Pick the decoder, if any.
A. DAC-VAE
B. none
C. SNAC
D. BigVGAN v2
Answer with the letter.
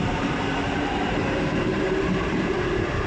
D